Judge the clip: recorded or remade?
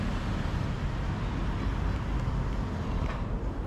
recorded